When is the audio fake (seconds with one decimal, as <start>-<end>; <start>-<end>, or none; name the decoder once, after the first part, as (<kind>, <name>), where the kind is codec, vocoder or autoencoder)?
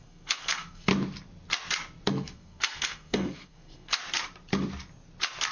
0.0-0.9 (codec, SNAC); 2.1-4.0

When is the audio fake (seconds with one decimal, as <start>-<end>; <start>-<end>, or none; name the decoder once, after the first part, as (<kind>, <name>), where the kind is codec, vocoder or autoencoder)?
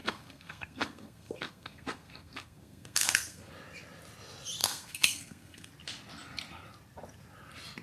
0.0-3.5 (codec, SNAC); 4.6-5.7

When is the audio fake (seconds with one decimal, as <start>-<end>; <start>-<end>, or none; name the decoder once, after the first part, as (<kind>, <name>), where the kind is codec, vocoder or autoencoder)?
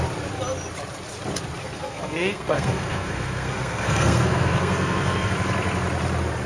1.6-5.3 (codec, SNAC)